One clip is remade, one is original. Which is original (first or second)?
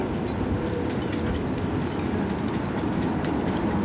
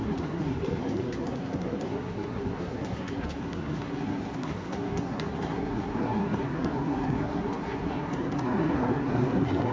first